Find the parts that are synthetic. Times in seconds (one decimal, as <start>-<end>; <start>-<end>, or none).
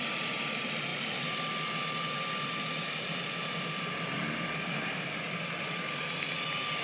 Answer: none